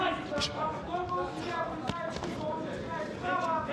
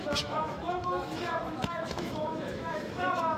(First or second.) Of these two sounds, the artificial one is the second